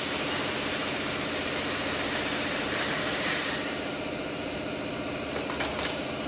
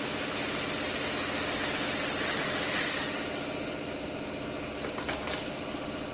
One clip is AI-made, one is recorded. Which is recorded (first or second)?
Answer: second